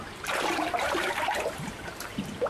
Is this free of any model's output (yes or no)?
no